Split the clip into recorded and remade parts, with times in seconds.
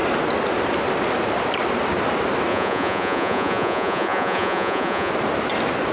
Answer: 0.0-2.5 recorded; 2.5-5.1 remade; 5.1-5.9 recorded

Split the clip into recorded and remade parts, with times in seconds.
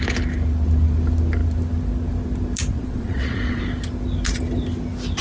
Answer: 0.0-2.7 recorded; 2.7-3.6 remade; 3.6-5.2 recorded